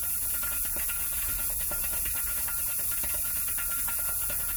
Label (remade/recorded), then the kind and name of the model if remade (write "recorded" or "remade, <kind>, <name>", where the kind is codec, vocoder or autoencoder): remade, vocoder, Vocos